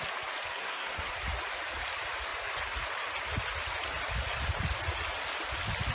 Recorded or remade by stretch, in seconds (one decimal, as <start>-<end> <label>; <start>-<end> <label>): 0.0-0.5 recorded; 0.5-1.1 remade; 1.1-5.9 recorded